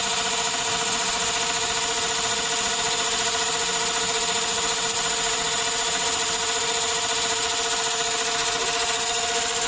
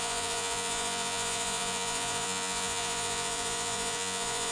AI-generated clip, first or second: second